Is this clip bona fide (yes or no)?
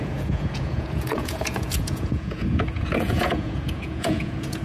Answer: no